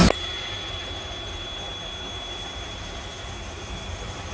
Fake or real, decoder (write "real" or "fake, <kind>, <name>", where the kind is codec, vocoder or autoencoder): real